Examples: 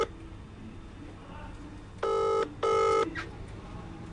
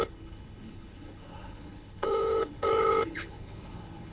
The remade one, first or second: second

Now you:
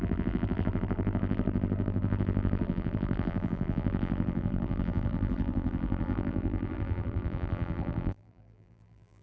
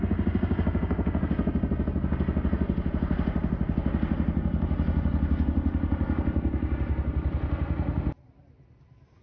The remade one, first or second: first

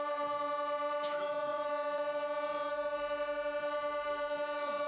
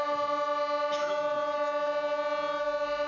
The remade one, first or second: first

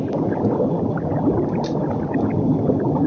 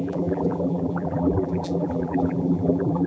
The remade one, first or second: second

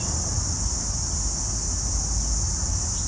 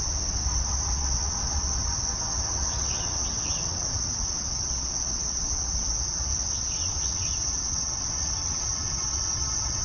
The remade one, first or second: second